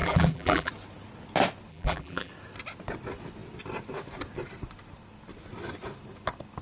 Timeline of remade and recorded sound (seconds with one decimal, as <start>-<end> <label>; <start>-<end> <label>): 0.0-0.7 remade; 0.7-1.7 recorded; 1.7-2.3 remade; 2.3-6.6 recorded